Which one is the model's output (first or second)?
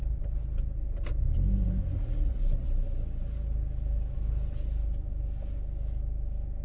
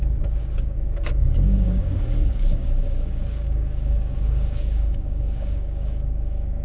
second